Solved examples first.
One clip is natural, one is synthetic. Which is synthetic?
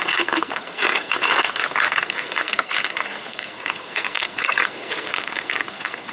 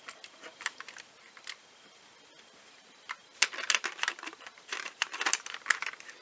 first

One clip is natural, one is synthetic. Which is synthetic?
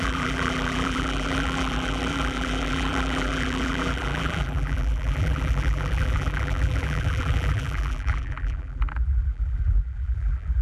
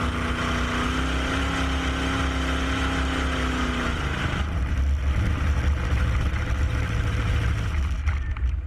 first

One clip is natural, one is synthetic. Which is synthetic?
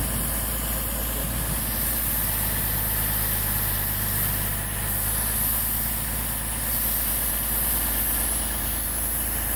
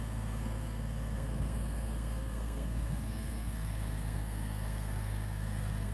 second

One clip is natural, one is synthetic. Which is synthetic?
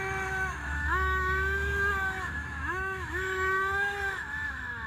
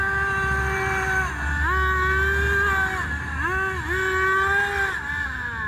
first